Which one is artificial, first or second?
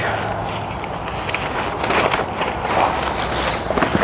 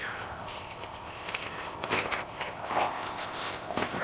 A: second